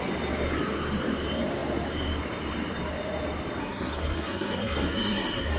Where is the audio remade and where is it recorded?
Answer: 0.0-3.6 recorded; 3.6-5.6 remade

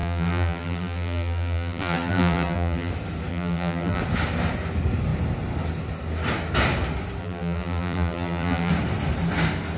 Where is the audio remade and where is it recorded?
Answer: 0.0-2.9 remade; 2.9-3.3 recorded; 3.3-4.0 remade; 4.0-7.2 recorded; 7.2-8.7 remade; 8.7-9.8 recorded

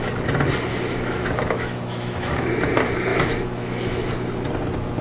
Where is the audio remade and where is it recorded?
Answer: 0.0-0.7 recorded; 0.7-2.7 remade; 2.7-3.1 recorded; 3.1-4.1 remade; 4.1-5.0 recorded

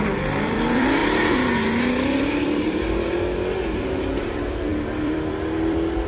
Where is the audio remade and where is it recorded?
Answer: 0.0-1.0 remade; 1.0-2.2 recorded; 2.2-6.1 remade

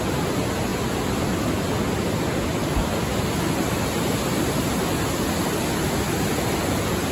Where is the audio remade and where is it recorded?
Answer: 0.0-7.1 recorded

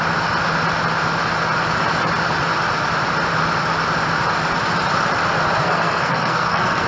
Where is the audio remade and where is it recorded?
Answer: 0.0-5.6 recorded; 5.6-6.9 remade